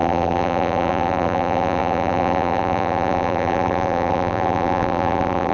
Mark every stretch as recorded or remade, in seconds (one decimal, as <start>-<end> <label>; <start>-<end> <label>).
0.0-5.5 remade